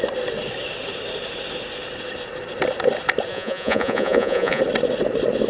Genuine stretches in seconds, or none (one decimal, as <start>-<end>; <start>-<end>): 0.0-3.3; 4.6-5.5